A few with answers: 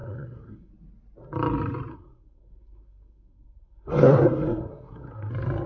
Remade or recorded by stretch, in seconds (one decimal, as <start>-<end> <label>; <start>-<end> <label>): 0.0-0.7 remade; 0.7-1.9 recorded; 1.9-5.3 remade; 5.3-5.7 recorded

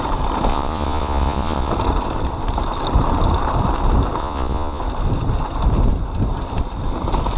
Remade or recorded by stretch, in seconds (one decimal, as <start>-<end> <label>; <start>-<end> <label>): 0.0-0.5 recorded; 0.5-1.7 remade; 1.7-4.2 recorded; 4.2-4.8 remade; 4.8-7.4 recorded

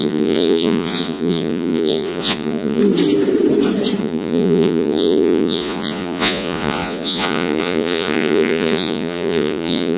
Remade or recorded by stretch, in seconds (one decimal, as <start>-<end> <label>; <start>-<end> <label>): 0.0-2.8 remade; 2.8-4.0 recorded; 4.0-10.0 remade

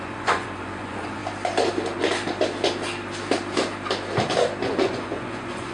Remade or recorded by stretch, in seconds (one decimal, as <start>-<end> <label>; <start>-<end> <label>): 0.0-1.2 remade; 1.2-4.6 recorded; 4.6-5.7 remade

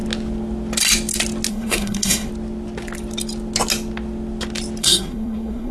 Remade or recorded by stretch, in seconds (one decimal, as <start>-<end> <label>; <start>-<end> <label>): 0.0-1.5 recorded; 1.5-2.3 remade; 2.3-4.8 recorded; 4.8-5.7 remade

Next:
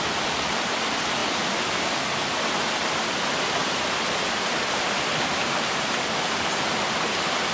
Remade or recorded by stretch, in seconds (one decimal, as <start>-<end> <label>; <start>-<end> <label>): 0.0-1.2 recorded; 1.2-1.9 remade; 1.9-3.6 recorded; 3.6-6.0 remade; 6.0-7.5 recorded

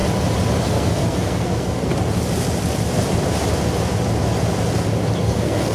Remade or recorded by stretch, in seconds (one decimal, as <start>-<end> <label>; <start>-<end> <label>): 0.0-0.6 recorded; 0.6-1.9 remade; 1.9-5.2 recorded; 5.2-5.7 remade

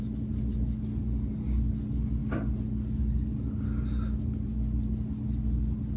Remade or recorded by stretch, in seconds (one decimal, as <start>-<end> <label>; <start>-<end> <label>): 0.0-6.0 recorded